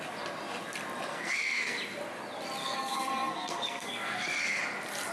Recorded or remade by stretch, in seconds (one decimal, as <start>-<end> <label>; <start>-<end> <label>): 0.0-1.1 recorded; 1.1-1.8 remade; 1.8-2.6 recorded; 2.6-4.6 remade; 4.6-5.1 recorded